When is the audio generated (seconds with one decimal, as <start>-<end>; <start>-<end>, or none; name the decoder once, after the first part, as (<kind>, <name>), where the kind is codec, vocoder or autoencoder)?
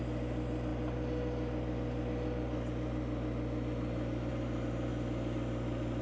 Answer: none